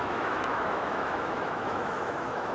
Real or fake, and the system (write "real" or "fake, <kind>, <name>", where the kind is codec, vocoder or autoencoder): fake, autoencoder, DAC-VAE